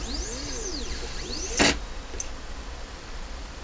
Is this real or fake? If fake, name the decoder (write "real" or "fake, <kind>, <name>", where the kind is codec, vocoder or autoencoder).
real